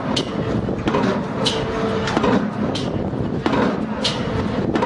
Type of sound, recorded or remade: recorded